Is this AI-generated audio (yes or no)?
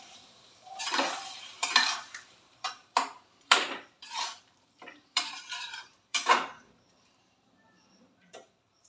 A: yes